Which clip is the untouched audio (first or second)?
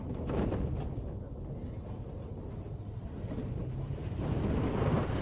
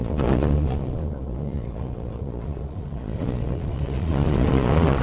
first